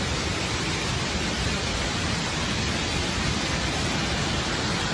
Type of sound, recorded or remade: recorded